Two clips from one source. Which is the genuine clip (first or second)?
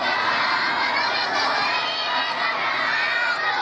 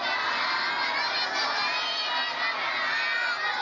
second